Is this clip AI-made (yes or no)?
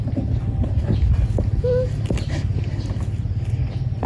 no